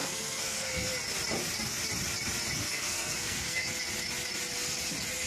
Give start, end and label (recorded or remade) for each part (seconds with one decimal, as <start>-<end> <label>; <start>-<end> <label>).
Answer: 0.0-0.9 remade; 0.9-2.6 recorded; 2.6-3.7 remade; 3.7-5.3 recorded